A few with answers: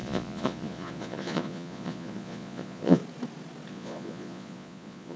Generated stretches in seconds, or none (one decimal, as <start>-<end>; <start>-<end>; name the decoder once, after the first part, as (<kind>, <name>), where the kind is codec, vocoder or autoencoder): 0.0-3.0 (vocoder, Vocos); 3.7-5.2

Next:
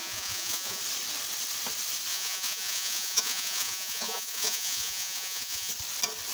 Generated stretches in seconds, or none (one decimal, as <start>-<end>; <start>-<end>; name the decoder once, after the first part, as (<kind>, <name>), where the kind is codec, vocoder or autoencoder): 0.0-0.8 (vocoder, Vocos); 2.1-5.7

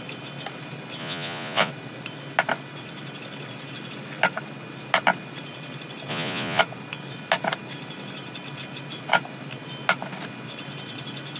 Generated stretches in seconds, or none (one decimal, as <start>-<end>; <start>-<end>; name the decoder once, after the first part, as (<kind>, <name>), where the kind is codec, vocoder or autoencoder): 1.0-1.7 (vocoder, Vocos); 6.1-6.6

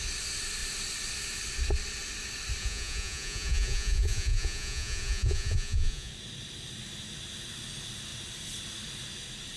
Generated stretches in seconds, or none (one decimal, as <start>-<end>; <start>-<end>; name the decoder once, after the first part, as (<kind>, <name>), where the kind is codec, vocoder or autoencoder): 2.6-6.1 (vocoder, Vocos)

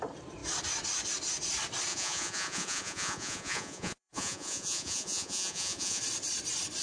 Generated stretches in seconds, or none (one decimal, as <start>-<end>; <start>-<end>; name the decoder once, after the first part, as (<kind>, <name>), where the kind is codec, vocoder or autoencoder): 1.9-6.0 (vocoder, Vocos)

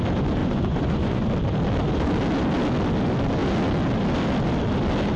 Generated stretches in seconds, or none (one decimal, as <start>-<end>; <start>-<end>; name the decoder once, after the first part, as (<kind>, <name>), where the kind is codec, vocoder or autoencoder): 0.4-1.3 (vocoder, Vocos)